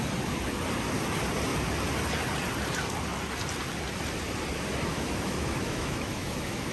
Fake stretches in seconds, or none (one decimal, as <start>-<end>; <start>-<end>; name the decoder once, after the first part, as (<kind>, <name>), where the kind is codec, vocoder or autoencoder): 4.9-6.7 (autoencoder, DAC-VAE)